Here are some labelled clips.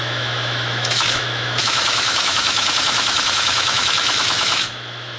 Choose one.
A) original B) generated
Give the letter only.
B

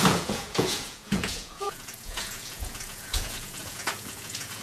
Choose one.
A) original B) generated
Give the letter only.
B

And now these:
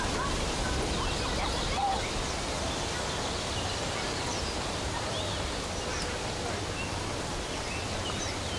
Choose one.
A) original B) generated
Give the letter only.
A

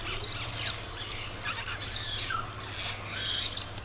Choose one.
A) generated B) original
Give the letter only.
B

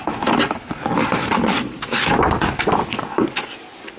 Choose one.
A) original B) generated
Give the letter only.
A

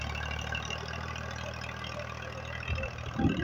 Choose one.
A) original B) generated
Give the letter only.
A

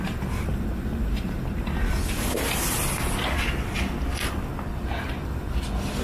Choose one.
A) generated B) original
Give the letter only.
B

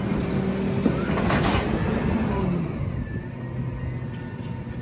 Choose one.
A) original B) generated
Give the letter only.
A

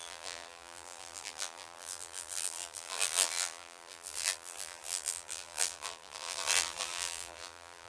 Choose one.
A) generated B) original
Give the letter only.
A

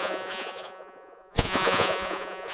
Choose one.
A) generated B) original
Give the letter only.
A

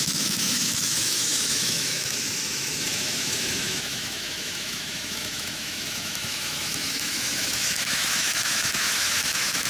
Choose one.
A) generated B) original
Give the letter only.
A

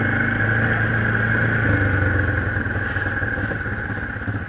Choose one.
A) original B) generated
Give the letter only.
A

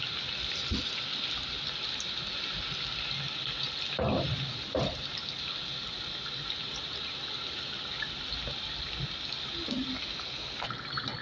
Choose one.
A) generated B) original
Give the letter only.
B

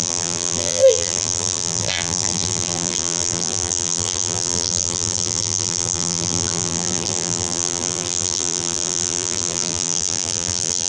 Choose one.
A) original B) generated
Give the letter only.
B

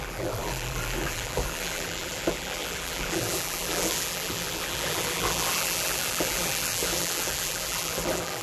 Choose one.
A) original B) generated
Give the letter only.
B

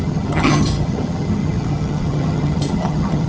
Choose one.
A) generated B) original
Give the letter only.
A